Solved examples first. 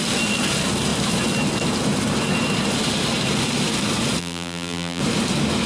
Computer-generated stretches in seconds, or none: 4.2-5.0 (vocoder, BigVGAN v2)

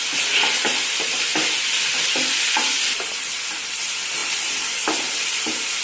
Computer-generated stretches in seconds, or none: none

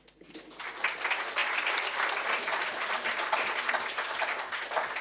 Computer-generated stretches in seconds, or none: none

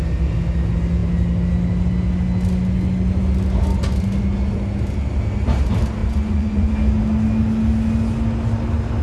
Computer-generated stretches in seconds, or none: 6.0-6.7 (vocoder, Vocos)